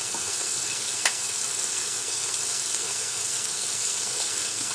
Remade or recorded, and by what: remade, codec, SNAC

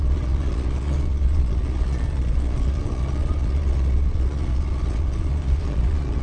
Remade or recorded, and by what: remade, vocoder, Vocos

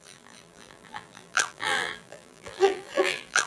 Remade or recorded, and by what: remade, vocoder, BigVGAN v2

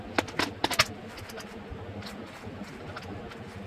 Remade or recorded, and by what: recorded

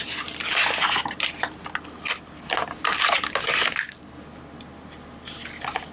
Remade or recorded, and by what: recorded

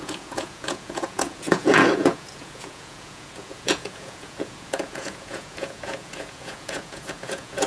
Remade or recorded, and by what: remade, vocoder, Vocos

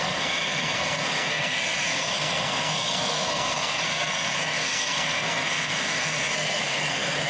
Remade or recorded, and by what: remade, codec, SNAC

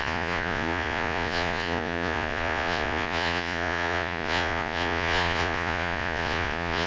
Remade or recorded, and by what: remade, vocoder, Vocos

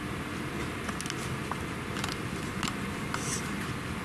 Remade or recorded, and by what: recorded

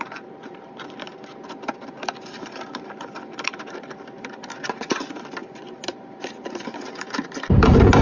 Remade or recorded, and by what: remade, vocoder, BigVGAN v2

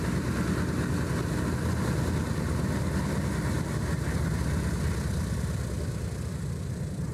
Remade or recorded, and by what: recorded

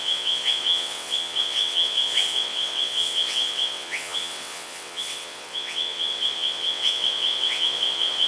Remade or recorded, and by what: remade, vocoder, WaveNeXt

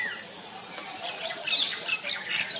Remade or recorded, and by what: recorded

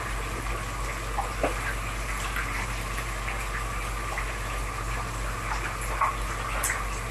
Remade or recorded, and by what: recorded